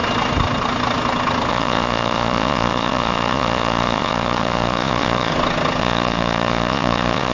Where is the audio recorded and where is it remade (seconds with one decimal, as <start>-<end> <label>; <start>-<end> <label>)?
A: 0.0-1.5 recorded; 1.5-5.3 remade; 5.3-5.8 recorded; 5.8-7.3 remade